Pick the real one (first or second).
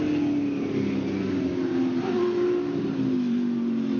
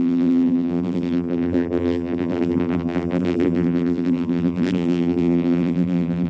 first